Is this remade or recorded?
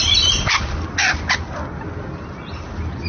recorded